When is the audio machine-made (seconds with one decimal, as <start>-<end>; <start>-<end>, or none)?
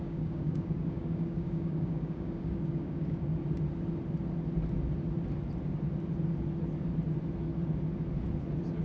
0.0-3.4